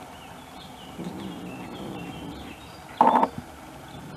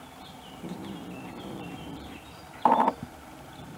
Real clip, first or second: first